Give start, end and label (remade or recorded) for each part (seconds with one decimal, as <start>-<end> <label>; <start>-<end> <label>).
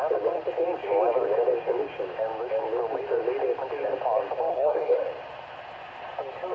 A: 0.0-4.5 recorded; 4.5-5.0 remade; 5.0-6.5 recorded